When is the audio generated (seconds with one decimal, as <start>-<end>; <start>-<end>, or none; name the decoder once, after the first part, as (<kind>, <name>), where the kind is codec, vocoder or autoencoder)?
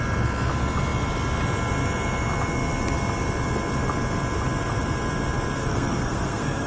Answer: 5.6-6.7 (codec, SNAC)